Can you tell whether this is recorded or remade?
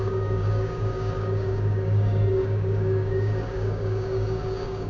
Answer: remade